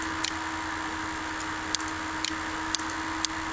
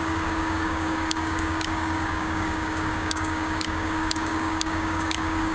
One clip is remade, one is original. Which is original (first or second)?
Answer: first